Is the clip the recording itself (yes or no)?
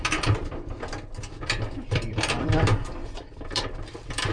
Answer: no